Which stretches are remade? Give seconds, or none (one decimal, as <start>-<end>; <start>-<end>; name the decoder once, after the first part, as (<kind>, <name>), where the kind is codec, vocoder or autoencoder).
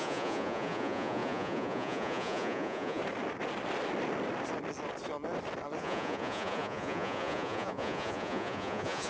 0.0-3.0 (vocoder, Vocos); 5.8-9.1